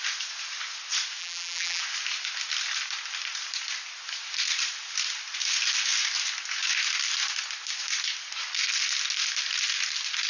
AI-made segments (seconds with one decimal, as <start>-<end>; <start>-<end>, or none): 1.2-1.8